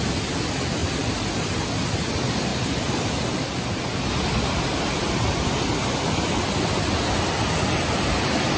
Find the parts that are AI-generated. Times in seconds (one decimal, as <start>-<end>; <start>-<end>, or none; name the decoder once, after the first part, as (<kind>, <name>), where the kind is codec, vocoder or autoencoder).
0.8-1.5 (vocoder, BigVGAN v2)